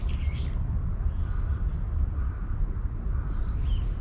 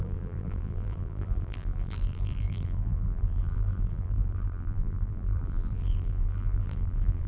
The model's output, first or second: second